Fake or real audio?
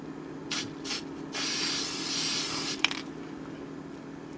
fake